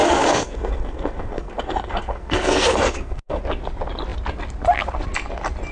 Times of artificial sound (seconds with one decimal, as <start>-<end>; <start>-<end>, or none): 0.0-3.4